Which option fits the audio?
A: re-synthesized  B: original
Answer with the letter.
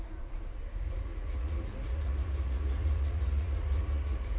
A